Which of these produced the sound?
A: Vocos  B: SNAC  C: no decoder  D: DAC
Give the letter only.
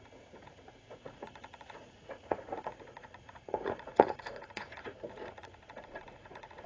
A